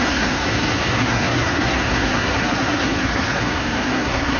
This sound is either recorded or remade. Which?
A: remade